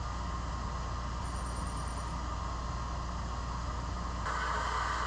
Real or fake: real